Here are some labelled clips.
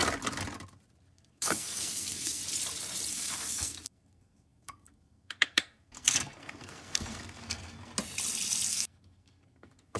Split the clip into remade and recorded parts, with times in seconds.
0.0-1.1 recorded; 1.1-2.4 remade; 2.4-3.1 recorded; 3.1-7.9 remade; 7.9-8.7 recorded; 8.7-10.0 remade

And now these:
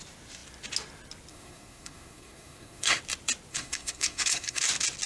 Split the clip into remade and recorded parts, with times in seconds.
0.0-1.3 recorded; 1.3-3.0 remade; 3.0-3.5 recorded; 3.5-4.6 remade; 4.6-5.1 recorded

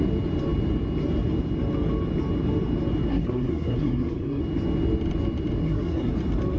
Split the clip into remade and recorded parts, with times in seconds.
0.0-3.1 recorded; 3.1-4.4 remade; 4.4-5.6 recorded; 5.6-6.1 remade; 6.1-6.6 recorded

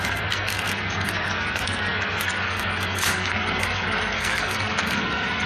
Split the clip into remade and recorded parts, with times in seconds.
0.0-5.5 remade

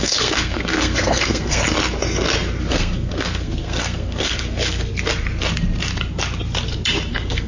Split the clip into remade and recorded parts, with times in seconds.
0.0-1.6 remade; 1.6-2.7 recorded; 2.7-4.9 remade; 4.9-7.1 recorded; 7.1-7.5 remade

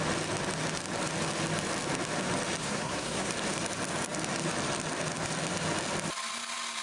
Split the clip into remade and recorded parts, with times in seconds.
0.0-2.6 recorded; 2.6-3.3 remade; 3.3-6.8 recorded

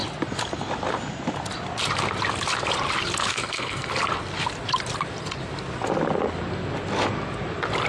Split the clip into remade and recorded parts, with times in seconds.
0.0-3.3 recorded; 3.3-3.9 remade; 3.9-7.9 recorded

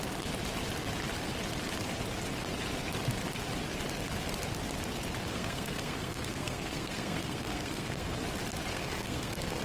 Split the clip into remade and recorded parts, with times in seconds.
0.0-5.3 recorded; 5.3-8.2 remade; 8.2-8.7 recorded; 8.7-9.6 remade